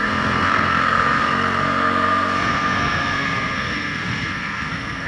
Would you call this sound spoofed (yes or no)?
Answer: yes